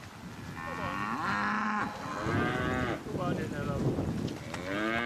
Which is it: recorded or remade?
recorded